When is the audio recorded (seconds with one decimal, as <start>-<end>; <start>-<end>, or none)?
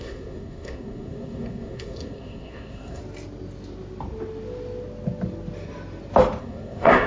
3.0-6.4